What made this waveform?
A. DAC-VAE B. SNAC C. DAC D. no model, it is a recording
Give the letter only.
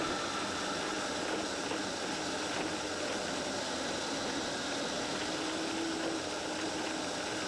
D